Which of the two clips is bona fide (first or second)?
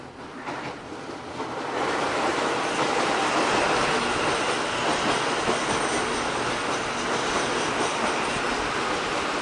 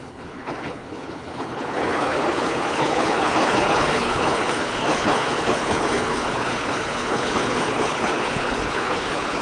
first